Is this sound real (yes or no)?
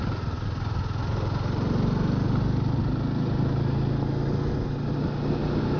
yes